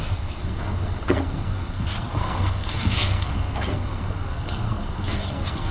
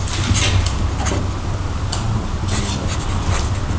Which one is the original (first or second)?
second